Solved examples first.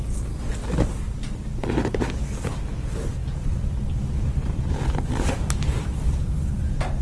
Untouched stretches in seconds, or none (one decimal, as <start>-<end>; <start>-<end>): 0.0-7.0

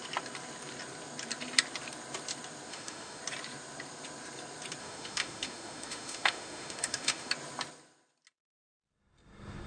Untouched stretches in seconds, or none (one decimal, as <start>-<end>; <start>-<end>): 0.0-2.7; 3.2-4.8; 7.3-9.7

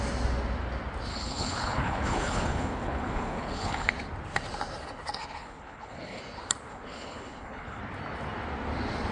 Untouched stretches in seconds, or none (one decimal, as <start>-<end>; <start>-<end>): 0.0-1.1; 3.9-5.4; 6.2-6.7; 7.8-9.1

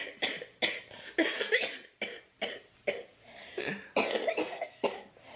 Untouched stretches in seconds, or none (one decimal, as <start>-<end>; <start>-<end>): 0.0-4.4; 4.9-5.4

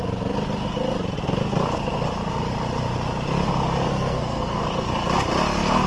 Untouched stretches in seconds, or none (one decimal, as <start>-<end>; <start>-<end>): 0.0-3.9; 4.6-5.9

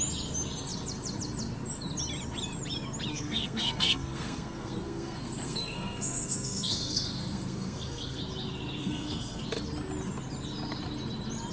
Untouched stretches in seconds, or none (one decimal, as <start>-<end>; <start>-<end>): 0.0-3.1; 8.2-8.8; 9.4-11.5